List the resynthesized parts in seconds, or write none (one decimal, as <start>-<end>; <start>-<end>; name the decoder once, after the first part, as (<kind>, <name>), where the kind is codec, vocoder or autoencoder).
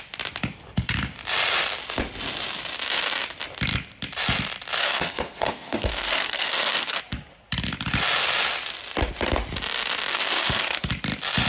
4.8-7.0 (codec, SNAC); 10.1-10.9